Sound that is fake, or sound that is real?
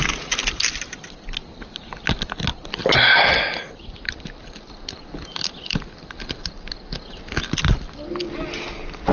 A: real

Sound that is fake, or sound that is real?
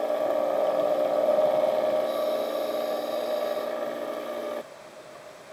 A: real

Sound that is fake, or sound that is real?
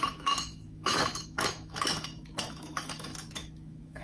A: fake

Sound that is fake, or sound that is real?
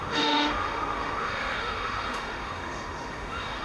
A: fake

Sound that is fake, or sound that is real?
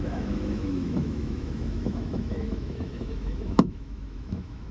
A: fake